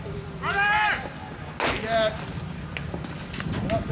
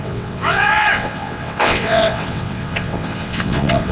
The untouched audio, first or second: first